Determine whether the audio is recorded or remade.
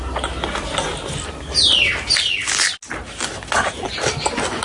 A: recorded